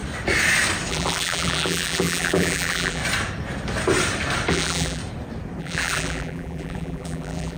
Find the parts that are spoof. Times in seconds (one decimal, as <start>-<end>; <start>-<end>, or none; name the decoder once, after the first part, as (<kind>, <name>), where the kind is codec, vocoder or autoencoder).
0.9-3.0 (vocoder, BigVGAN v2); 4.5-5.0; 5.6-7.6